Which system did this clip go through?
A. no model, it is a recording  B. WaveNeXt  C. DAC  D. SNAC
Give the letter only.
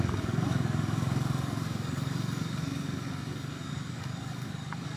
C